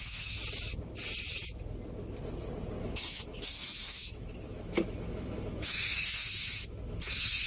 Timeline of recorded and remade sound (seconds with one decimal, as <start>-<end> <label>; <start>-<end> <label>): 0.0-0.4 remade; 0.4-2.8 recorded; 2.8-7.5 remade